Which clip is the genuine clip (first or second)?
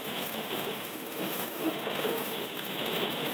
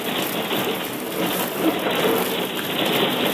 second